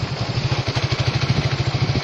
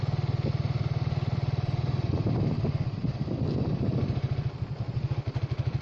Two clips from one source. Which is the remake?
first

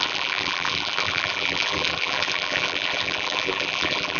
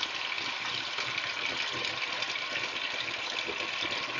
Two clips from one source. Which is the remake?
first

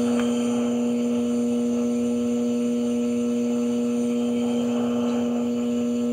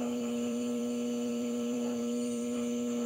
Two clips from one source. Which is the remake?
second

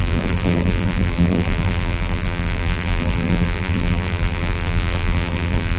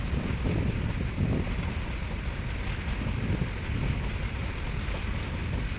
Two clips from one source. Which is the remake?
first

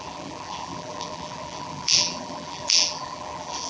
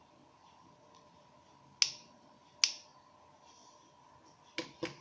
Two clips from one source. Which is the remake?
first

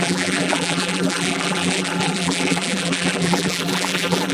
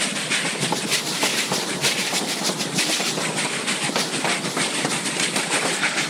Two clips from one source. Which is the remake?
first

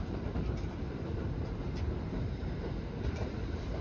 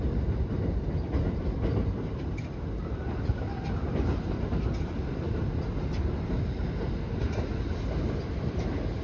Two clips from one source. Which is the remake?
first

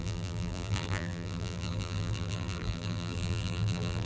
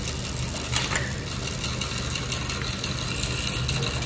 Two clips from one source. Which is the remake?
first